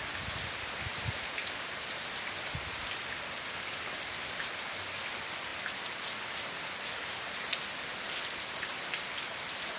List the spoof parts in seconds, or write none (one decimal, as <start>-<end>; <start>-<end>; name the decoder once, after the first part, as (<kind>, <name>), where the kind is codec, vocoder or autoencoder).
none